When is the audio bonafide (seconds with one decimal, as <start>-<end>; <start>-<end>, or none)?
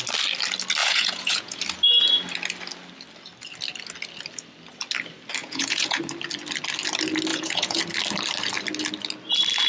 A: 0.0-0.8; 1.6-5.4; 6.0-7.3; 7.8-9.7